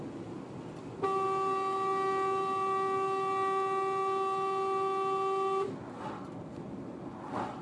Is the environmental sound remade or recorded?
recorded